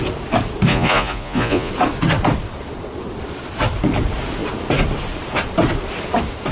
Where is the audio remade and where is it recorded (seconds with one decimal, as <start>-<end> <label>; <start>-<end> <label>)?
0.0-0.7 recorded; 0.7-1.7 remade; 1.7-6.5 recorded